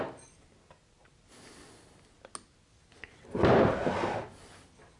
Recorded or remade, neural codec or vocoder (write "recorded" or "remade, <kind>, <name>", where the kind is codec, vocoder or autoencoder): recorded